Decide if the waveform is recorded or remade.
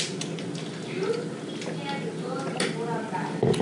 recorded